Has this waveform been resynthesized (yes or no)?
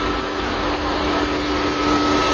no